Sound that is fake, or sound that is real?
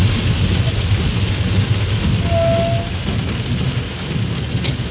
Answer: real